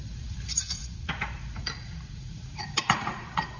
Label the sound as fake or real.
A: fake